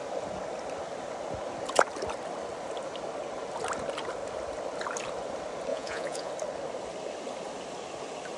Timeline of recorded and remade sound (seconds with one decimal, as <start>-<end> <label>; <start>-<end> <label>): 0.0-5.7 recorded; 5.7-6.3 remade; 6.3-8.4 recorded

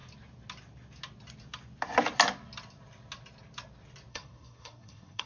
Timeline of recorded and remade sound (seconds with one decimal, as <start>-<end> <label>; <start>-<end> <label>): 0.0-4.1 recorded; 4.1-5.3 remade

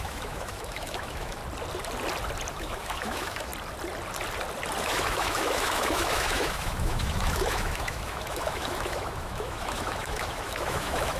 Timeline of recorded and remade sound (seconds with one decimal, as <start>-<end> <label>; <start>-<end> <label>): 0.0-1.4 remade; 1.4-2.5 recorded; 2.5-3.5 remade; 3.5-4.8 recorded; 4.8-11.2 remade

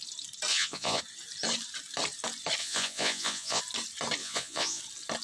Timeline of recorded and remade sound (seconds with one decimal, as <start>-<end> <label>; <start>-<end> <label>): 0.0-0.5 recorded; 0.5-1.0 remade; 1.0-2.6 recorded; 2.6-3.6 remade; 3.6-4.2 recorded; 4.2-4.8 remade; 4.8-5.2 recorded

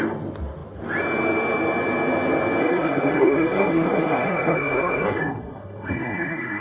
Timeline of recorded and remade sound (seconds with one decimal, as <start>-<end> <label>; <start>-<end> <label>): 0.0-2.6 recorded; 2.6-6.6 remade

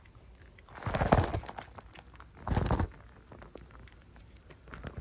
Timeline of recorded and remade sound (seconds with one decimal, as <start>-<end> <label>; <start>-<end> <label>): 0.0-5.0 recorded

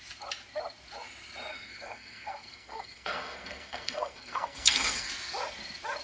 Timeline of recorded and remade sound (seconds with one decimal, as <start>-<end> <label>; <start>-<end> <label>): 0.0-1.5 recorded; 1.5-5.1 remade; 5.1-6.0 recorded

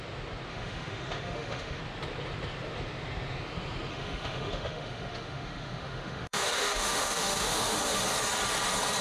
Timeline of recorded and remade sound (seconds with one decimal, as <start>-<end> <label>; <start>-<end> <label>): 0.0-0.5 recorded; 0.5-1.8 remade; 1.8-3.9 recorded; 3.9-8.0 remade; 8.0-9.0 recorded